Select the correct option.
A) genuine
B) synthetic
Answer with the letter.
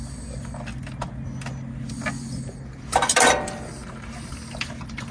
A